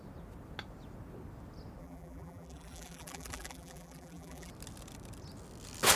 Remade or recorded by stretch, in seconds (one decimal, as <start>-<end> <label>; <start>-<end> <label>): 0.0-1.8 recorded; 1.8-4.5 remade; 4.5-6.0 recorded